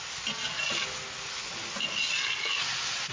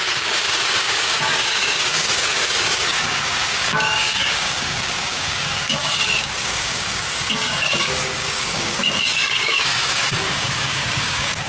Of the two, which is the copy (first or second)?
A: second